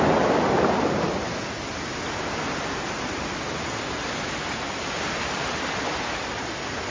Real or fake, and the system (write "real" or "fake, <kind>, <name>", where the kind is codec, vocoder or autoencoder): real